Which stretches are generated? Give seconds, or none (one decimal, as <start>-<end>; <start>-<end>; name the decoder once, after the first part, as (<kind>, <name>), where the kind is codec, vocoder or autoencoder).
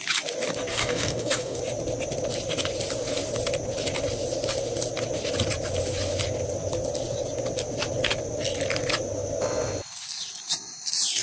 0.7-1.6 (codec, DAC)